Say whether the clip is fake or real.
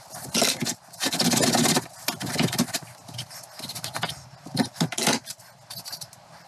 real